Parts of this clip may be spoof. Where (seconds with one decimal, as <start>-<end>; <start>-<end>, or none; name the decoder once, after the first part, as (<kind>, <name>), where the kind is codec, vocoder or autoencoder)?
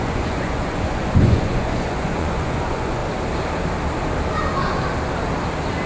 0.0-3.0 (vocoder, Vocos)